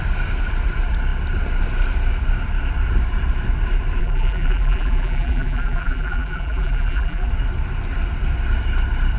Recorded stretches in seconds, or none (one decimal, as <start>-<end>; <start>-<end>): 0.0-4.0; 7.3-9.2